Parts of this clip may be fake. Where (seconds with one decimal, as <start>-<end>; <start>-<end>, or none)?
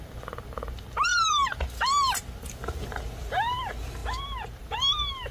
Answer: 0.0-4.0; 4.6-5.3